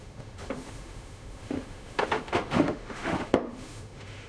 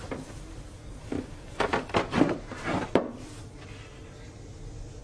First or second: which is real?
second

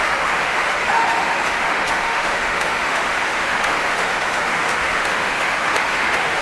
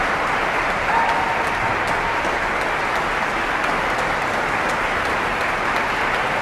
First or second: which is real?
second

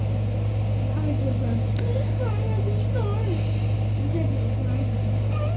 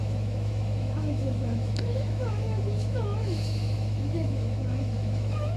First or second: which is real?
first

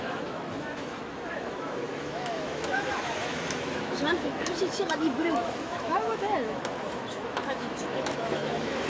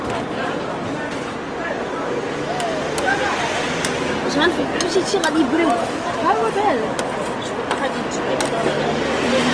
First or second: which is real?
second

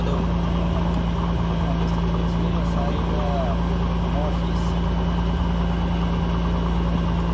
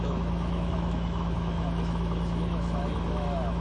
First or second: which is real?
first